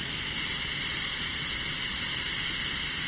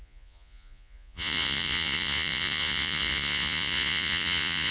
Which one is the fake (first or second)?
second